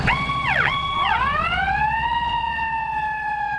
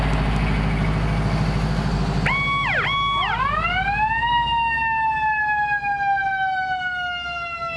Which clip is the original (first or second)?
second